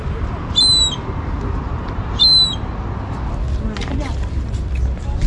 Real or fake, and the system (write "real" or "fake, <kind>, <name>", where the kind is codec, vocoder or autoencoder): real